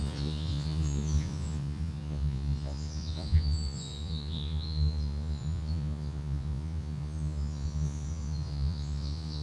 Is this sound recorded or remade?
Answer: remade